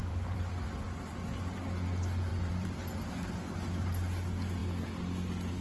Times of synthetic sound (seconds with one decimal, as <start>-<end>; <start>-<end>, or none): 0.0-1.6; 2.3-2.8